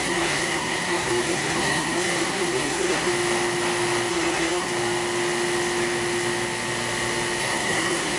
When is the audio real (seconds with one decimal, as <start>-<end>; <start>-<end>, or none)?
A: 3.1-4.1; 4.7-7.4